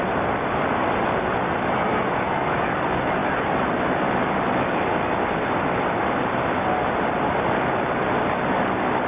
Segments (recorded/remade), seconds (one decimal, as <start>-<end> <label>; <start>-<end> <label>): 0.0-9.1 recorded